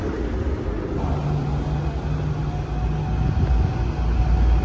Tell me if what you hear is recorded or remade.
recorded